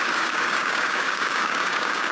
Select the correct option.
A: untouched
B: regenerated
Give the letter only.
B